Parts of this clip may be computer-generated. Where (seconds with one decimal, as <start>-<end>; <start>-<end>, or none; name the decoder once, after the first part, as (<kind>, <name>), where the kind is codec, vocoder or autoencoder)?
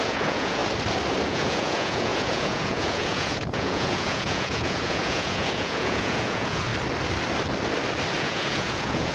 0.0-0.6 (vocoder, Vocos); 1.3-6.7; 8.2-9.1